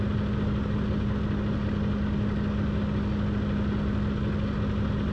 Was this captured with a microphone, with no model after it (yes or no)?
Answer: yes